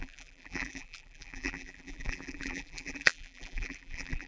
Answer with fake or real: fake